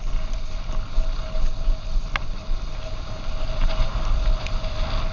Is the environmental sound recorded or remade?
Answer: recorded